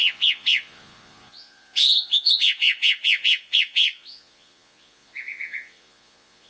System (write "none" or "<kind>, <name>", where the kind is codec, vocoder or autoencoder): vocoder, Vocos